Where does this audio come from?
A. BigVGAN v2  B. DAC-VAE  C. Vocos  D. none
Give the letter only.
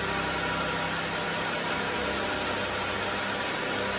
D